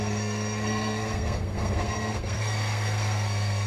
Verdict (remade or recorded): remade